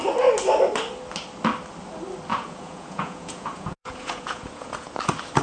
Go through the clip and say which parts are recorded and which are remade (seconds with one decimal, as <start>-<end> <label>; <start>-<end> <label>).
0.0-2.3 recorded; 2.3-4.9 remade; 4.9-5.4 recorded